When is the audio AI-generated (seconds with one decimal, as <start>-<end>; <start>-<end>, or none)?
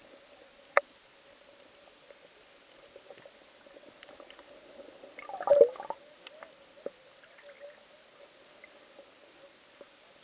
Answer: none